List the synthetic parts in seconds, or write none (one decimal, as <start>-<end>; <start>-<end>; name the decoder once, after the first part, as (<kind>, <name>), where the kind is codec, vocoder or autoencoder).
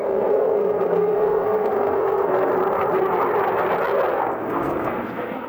0.0-2.5 (codec, SNAC); 4.1-5.5